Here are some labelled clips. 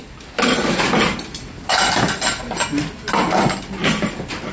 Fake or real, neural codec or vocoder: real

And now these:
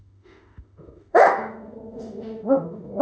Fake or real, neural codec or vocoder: fake, autoencoder, DAC-VAE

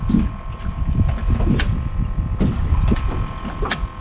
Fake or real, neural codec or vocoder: real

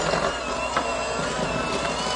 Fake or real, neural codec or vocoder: real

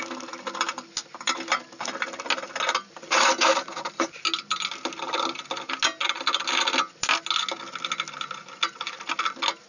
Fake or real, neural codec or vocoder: real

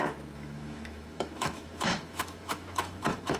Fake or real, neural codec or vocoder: fake, autoencoder, DAC-VAE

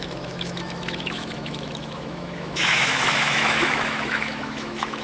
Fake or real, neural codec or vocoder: fake, autoencoder, DAC-VAE